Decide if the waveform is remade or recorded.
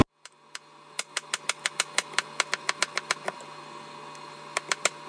recorded